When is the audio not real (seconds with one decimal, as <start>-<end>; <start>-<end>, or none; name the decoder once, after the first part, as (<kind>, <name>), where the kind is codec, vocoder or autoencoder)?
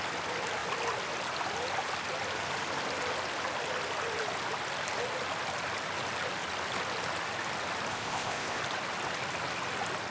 7.9-8.6 (codec, ZipCodec)